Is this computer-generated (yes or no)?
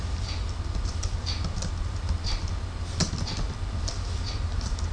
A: no